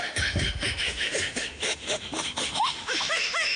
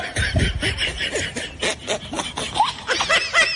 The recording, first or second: second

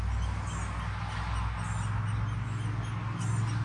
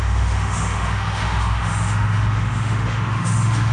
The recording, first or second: first